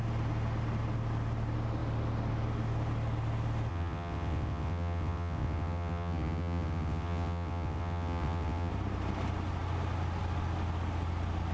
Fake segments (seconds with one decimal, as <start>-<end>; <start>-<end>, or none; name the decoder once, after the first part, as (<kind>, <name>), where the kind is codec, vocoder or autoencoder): 3.7-8.7 (vocoder, WaveNeXt)